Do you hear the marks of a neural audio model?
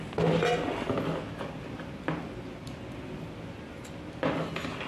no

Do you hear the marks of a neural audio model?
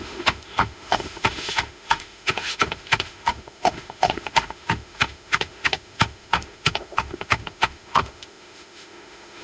yes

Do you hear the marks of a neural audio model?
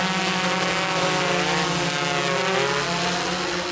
no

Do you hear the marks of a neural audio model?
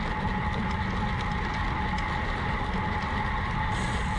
no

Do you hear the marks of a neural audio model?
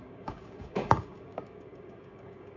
yes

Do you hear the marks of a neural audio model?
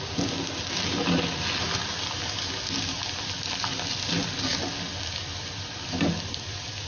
no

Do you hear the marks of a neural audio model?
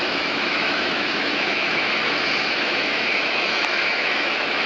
yes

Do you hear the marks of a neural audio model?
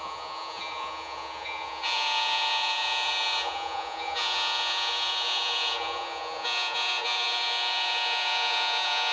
yes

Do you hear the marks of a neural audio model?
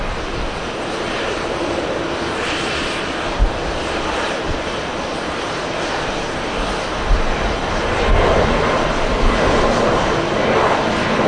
no